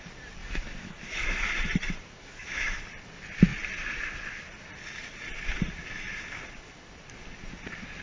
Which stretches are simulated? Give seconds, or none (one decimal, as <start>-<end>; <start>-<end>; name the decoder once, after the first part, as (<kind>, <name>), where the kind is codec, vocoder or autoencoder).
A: 0.4-1.5 (autoencoder, DAC-VAE); 2.2-2.8